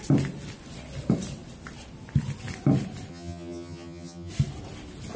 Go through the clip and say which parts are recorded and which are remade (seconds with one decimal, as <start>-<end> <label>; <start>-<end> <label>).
0.0-3.1 recorded; 3.1-4.3 remade; 4.3-5.2 recorded